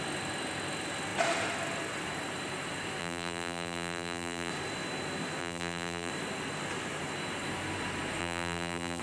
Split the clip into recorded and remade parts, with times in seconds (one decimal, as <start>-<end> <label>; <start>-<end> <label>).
0.0-3.0 recorded; 3.0-4.5 remade; 4.5-5.4 recorded; 5.4-6.1 remade; 6.1-8.2 recorded; 8.2-9.0 remade